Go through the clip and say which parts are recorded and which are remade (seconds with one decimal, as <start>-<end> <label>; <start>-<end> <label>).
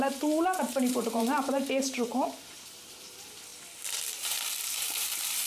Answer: 0.0-3.5 remade; 3.5-4.1 recorded; 4.1-5.5 remade